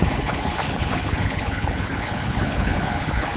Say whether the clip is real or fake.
fake